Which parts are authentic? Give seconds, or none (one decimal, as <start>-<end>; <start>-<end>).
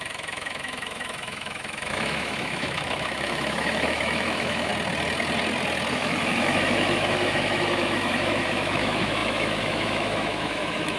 4.7-5.9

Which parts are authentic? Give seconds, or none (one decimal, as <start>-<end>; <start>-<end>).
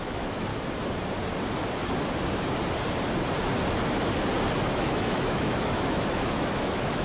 0.5-4.7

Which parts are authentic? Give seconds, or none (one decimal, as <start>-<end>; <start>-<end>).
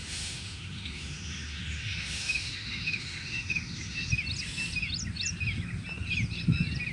4.1-6.9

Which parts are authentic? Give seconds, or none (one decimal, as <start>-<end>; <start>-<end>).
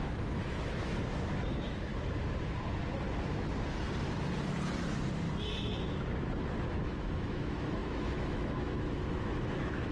0.9-1.5; 1.9-6.7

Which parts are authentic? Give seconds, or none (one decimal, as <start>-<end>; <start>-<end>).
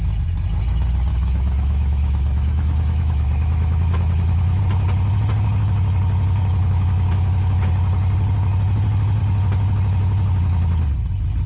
0.0-1.1; 4.6-6.4; 7.7-11.5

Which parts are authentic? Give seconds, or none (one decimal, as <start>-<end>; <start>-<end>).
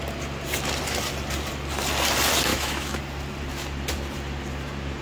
0.0-2.5; 3.0-5.0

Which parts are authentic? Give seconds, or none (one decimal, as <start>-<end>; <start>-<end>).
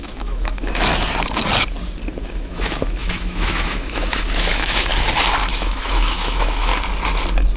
0.9-2.2; 4.9-5.5; 6.7-7.6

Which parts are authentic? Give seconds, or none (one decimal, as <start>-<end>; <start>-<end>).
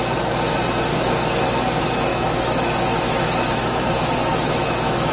0.0-0.9; 1.6-2.1